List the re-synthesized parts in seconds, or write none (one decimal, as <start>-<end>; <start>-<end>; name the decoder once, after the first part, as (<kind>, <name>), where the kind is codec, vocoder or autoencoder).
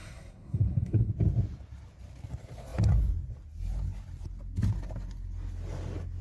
0.0-1.1 (codec, SNAC)